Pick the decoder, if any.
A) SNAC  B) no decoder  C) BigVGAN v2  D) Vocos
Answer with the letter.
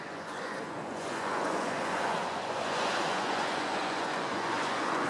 D